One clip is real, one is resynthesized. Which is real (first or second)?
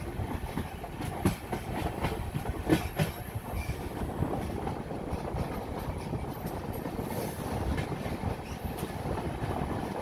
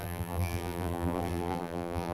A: first